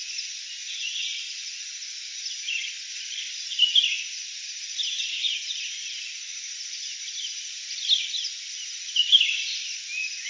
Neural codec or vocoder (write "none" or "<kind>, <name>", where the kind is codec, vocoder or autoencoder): none